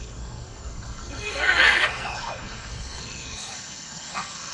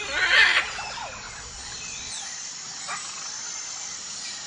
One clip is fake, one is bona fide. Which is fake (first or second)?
first